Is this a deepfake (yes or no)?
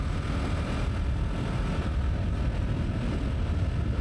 no